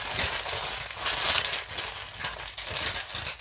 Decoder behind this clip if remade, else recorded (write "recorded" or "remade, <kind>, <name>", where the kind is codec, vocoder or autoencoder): recorded